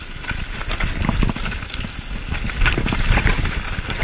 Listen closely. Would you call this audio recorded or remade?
remade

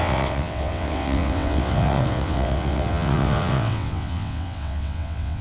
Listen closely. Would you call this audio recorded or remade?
remade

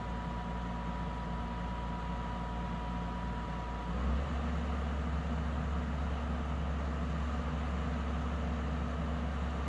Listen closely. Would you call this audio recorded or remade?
recorded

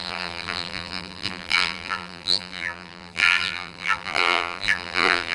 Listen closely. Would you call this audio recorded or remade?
remade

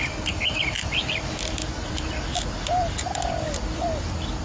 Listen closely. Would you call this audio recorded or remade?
remade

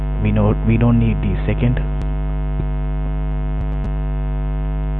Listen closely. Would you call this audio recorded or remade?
recorded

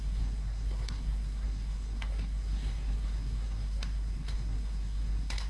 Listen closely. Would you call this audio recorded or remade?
remade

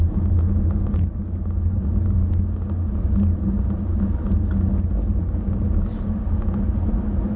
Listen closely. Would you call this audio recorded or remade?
recorded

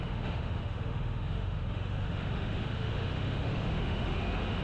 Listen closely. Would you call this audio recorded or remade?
remade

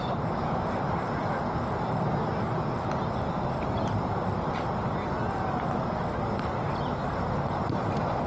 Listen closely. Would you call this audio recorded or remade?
recorded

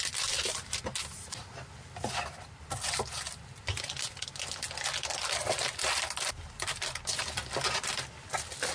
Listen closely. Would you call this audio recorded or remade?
recorded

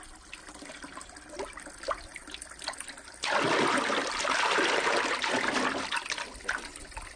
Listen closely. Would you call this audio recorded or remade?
recorded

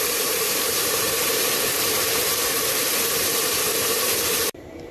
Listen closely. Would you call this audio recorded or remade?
remade